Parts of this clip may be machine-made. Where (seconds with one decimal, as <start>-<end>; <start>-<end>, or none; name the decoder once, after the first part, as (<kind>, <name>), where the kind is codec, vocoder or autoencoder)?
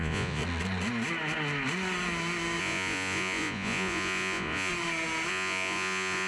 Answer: 0.0-0.4 (vocoder, Vocos); 2.6-4.7; 5.3-6.3